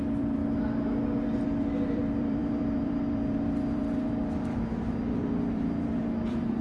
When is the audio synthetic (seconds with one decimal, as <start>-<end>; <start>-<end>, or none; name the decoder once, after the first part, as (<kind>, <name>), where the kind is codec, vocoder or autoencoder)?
0.0-0.4 (vocoder, BigVGAN v2); 1.6-6.6